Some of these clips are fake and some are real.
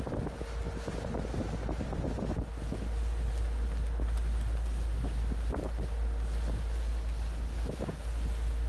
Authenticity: real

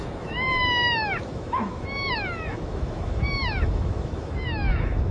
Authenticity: fake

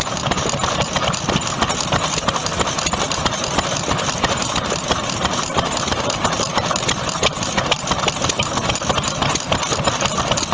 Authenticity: real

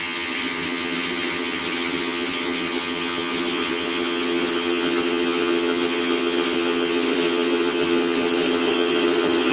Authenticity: fake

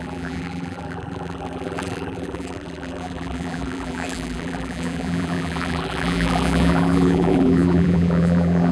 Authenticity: fake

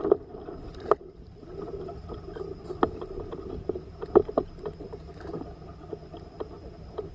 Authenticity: real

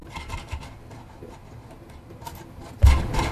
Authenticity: real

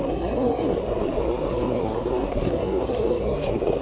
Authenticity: fake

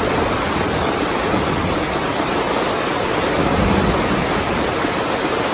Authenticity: real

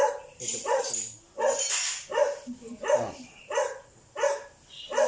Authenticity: real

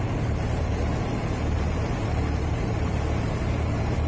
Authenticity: fake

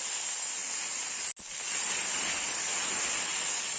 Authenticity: real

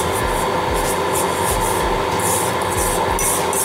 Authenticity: real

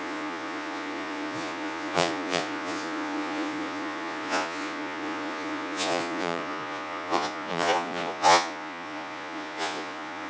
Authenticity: fake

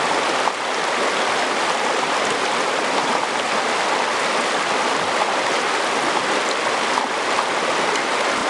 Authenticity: real